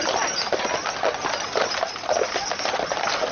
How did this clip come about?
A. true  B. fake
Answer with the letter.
A